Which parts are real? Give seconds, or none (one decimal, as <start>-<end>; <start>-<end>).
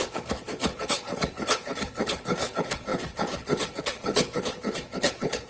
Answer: none